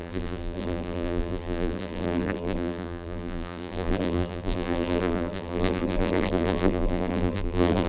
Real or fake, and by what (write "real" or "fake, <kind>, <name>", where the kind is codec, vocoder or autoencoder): fake, vocoder, BigVGAN v2